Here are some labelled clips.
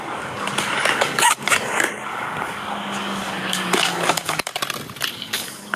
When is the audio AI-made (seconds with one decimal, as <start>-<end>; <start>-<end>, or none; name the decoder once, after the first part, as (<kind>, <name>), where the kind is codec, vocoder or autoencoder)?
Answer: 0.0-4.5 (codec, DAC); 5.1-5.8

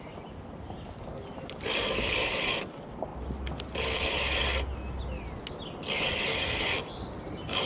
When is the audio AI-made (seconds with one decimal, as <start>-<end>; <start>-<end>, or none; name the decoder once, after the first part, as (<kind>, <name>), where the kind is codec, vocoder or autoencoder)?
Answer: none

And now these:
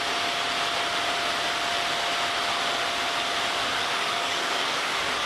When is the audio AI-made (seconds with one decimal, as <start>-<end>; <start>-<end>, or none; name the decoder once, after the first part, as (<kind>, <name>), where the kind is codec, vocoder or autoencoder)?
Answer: 3.6-5.3 (codec, DAC)

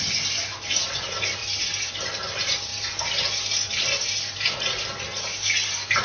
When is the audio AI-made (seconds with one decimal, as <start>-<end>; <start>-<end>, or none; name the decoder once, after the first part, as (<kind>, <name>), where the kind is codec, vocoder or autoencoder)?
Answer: none

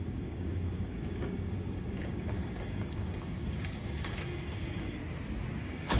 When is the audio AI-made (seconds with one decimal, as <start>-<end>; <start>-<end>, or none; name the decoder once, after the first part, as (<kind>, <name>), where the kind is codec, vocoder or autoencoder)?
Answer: 0.0-5.0 (codec, DAC); 5.6-6.0

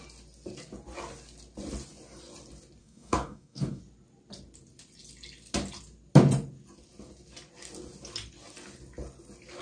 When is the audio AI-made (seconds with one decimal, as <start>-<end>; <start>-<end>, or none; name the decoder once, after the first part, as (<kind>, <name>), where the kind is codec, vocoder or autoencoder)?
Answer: 2.8-3.8 (codec, DAC)

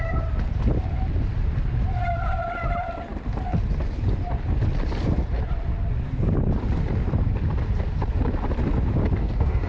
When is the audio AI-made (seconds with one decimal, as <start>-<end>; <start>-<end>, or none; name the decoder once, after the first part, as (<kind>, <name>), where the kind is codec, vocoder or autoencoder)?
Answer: 9.2-9.7 (codec, DAC)

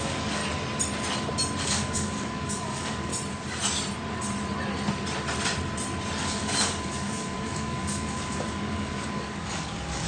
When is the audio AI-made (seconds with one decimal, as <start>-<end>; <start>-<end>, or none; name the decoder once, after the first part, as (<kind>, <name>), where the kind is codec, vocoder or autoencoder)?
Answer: 0.0-0.4 (codec, DAC); 1.6-3.1; 6.2-10.1